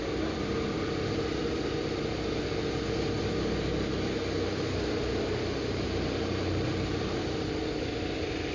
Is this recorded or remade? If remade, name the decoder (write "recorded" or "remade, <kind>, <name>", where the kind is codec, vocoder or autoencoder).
recorded